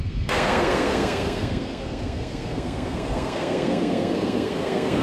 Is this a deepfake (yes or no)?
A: yes